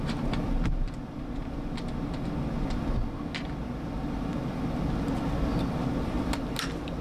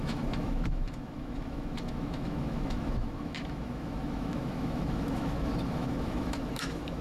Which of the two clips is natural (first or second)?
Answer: first